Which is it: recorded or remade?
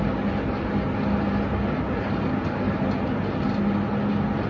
recorded